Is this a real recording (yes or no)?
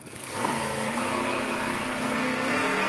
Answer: no